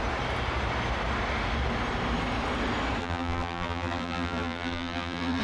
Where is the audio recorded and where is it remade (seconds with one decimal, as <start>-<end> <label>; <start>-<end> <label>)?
0.0-3.0 recorded; 3.0-5.4 remade